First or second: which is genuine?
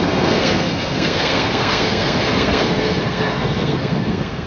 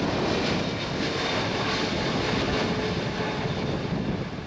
second